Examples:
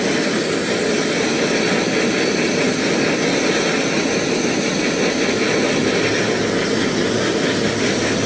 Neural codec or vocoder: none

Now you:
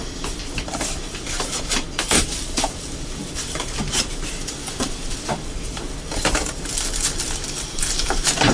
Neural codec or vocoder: vocoder, BigVGAN v2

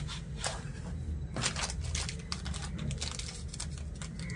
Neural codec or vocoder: none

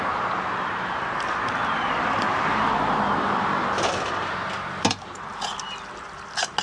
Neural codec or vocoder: none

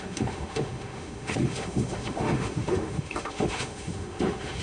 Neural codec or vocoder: autoencoder, DAC-VAE